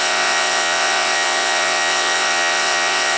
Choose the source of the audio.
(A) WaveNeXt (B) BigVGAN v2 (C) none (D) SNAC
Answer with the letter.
A